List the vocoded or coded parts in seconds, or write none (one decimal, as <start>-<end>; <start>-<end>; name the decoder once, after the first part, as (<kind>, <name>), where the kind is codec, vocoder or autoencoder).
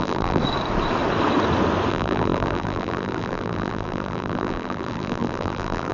0.0-0.4 (vocoder, BigVGAN v2); 1.9-5.9